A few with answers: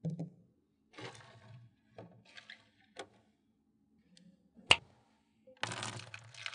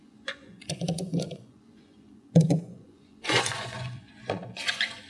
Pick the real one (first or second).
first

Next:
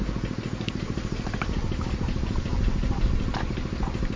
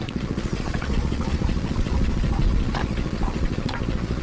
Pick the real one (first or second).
first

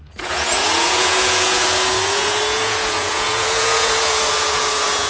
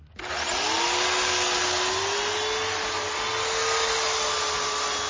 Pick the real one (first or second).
second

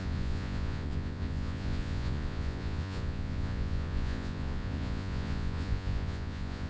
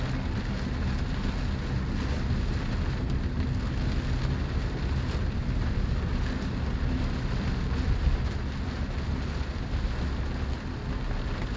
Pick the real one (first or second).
second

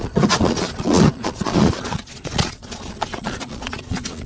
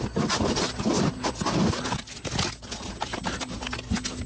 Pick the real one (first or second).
second